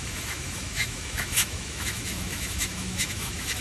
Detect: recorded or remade remade